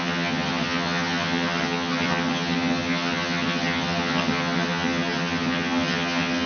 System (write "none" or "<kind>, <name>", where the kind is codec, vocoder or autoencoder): vocoder, HiFi-GAN